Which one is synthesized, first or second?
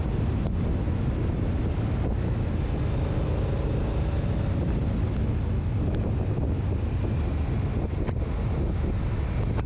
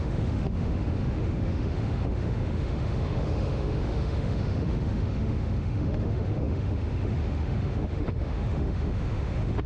second